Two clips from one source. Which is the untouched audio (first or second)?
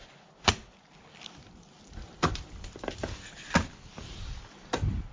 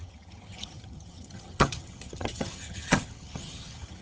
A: first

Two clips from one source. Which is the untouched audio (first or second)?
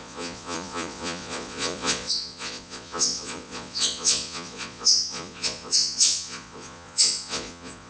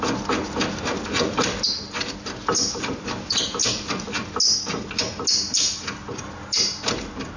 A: second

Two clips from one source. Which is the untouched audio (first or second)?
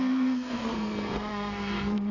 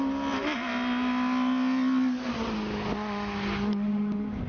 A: second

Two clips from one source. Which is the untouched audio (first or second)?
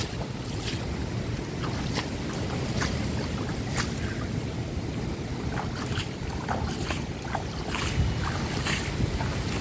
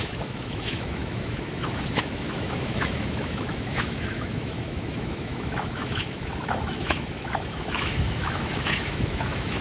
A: first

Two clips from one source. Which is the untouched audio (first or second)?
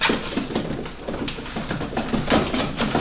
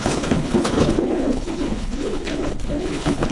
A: first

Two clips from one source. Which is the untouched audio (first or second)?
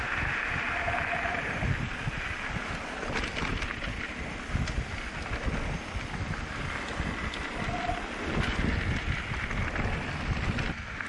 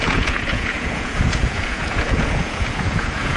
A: first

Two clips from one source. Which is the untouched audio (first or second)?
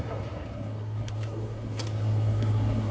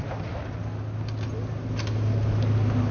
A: second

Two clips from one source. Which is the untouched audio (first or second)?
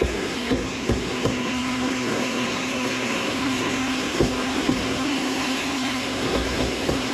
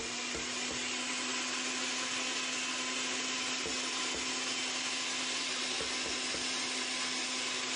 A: second